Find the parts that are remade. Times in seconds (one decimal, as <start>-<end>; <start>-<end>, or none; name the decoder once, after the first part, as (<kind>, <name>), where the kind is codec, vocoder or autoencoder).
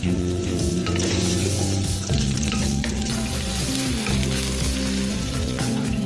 0.0-3.6 (vocoder, Vocos); 5.1-6.1